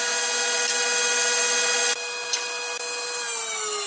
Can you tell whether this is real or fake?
real